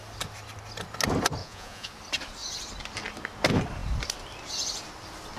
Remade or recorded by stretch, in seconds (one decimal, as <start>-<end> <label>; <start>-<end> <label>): 0.0-1.4 recorded; 1.4-1.9 remade; 1.9-5.4 recorded